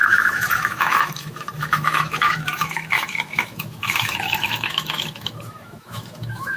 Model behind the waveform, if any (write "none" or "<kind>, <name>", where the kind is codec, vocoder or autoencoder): autoencoder, DAC-VAE